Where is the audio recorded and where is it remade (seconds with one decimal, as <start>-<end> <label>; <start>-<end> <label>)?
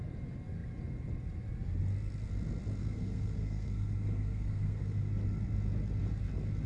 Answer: 0.0-2.8 recorded; 2.8-5.1 remade; 5.1-6.7 recorded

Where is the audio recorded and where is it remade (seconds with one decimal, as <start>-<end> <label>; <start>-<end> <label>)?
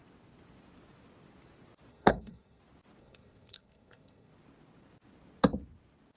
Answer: 0.0-1.9 recorded; 1.9-2.6 remade; 2.6-3.0 recorded; 3.0-4.3 remade; 4.3-6.2 recorded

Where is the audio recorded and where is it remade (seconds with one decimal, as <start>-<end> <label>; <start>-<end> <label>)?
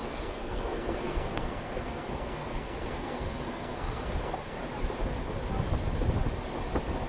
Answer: 0.0-4.6 remade; 4.6-7.1 recorded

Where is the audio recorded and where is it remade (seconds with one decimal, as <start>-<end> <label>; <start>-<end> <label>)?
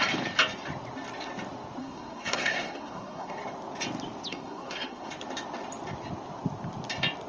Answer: 0.0-1.8 recorded; 1.8-3.4 remade; 3.4-4.3 recorded; 4.3-5.1 remade; 5.1-7.3 recorded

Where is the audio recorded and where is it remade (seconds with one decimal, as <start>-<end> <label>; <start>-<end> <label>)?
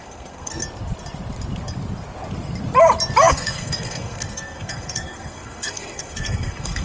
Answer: 0.0-0.6 remade; 0.6-3.3 recorded; 3.3-6.8 remade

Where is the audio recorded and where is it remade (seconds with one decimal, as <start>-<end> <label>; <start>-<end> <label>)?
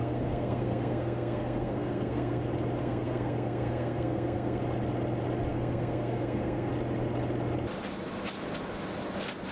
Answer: 0.0-2.4 remade; 2.4-2.8 recorded; 2.8-4.6 remade; 4.6-5.5 recorded; 5.5-6.7 remade; 6.7-9.5 recorded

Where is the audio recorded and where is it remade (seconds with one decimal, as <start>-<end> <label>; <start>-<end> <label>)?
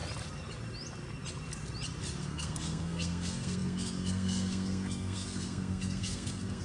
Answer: 0.0-2.2 recorded; 2.2-6.6 remade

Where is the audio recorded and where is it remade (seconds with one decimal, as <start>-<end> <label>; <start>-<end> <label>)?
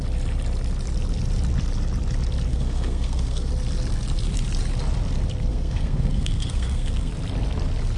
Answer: 0.0-2.5 recorded; 2.5-3.5 remade; 3.5-5.5 recorded; 5.5-7.1 remade; 7.1-8.0 recorded